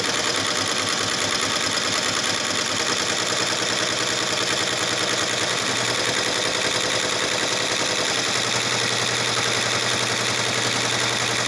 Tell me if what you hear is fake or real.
real